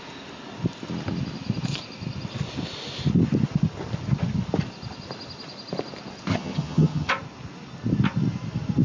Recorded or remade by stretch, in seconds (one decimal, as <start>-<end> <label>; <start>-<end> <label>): 0.0-6.3 recorded; 6.3-7.1 remade; 7.1-8.8 recorded